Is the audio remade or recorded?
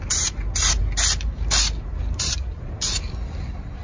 recorded